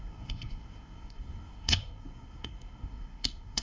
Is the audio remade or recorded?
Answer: remade